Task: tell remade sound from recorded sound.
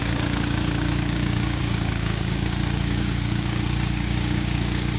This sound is remade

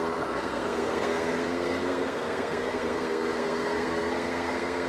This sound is remade